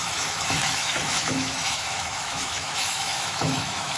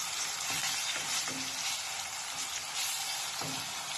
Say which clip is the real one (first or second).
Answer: second